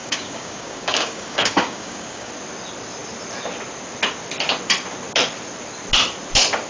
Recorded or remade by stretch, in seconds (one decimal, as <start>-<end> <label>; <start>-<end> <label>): 0.0-2.3 remade; 2.3-6.7 recorded